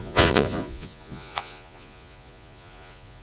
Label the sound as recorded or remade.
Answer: remade